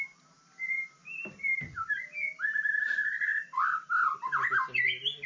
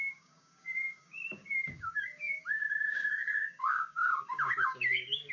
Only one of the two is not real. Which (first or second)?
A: second